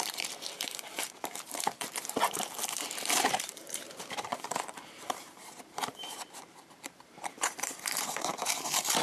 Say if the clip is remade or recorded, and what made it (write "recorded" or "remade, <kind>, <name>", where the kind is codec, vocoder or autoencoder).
remade, vocoder, BigVGAN v2